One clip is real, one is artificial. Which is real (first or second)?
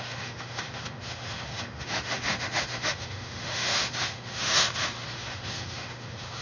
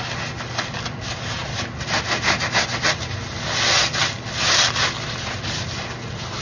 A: second